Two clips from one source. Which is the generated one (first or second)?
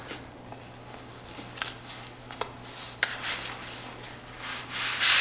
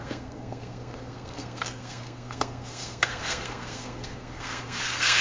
second